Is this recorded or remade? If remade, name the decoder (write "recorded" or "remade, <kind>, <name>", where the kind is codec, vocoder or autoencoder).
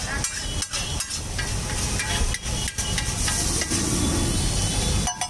recorded